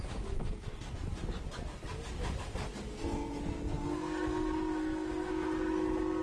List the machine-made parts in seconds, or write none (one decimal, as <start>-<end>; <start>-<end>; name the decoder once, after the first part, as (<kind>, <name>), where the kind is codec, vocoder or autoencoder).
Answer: 0.4-0.9 (codec, SNAC); 2.9-5.3